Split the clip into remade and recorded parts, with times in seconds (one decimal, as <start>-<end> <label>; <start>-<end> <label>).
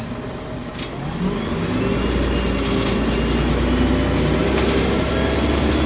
0.0-4.4 recorded; 4.4-5.1 remade; 5.1-5.9 recorded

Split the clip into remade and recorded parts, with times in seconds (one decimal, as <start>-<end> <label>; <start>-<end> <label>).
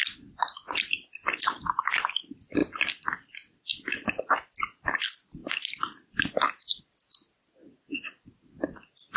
0.0-1.2 recorded; 1.2-1.9 remade; 1.9-2.6 recorded; 2.6-3.3 remade; 3.3-3.7 recorded; 3.7-4.3 remade; 4.3-5.4 recorded; 5.4-6.8 remade; 6.8-9.2 recorded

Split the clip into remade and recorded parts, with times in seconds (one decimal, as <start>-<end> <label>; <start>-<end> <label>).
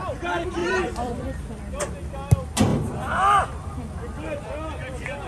0.0-0.6 recorded; 0.6-1.2 remade; 1.2-2.7 recorded; 2.7-3.7 remade; 3.7-5.3 recorded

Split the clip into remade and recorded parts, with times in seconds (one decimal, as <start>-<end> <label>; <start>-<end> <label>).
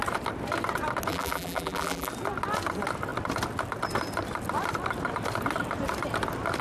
0.0-1.1 recorded; 1.1-2.1 remade; 2.1-6.6 recorded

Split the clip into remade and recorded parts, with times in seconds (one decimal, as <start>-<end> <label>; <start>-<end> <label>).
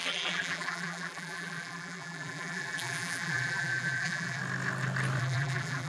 0.0-4.4 remade; 4.4-5.2 recorded; 5.2-5.9 remade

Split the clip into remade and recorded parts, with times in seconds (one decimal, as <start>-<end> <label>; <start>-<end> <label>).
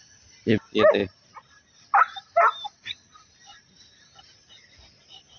0.0-1.0 recorded; 1.0-4.2 remade; 4.2-5.4 recorded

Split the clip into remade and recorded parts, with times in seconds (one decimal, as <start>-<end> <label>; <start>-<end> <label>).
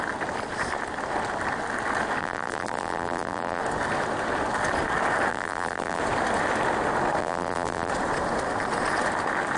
0.0-2.2 recorded; 2.2-3.6 remade; 3.6-5.3 recorded; 5.3-6.0 remade; 6.0-7.2 recorded; 7.2-7.9 remade; 7.9-9.6 recorded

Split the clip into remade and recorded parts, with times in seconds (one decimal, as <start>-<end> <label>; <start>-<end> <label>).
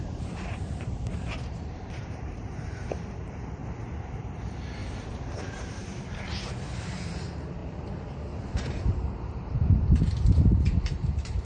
0.0-3.6 remade; 3.6-4.2 recorded; 4.2-7.6 remade; 7.6-8.5 recorded; 8.5-11.5 remade